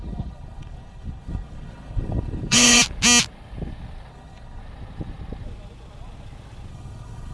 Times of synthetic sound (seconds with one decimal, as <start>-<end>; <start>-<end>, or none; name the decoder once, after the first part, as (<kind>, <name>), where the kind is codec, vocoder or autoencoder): 0.0-2.8 (codec, HILCodec); 4.1-4.6; 6.7-7.3